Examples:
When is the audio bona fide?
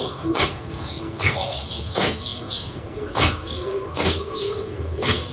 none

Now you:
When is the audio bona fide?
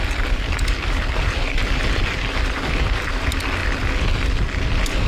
0.0-5.1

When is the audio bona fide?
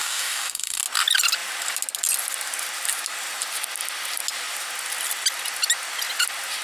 0.8-6.6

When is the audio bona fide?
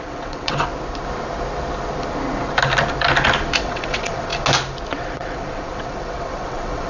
0.7-3.6; 4.3-4.9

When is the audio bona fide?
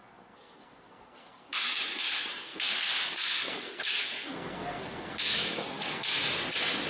6.2-6.9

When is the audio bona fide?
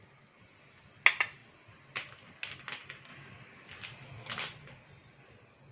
0.0-5.7